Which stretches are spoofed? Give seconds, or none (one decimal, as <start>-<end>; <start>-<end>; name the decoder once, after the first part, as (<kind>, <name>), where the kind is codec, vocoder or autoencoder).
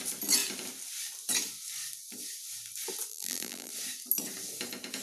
3.1-3.7 (vocoder, BigVGAN v2)